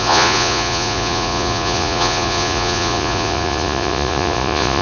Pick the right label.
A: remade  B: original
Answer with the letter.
A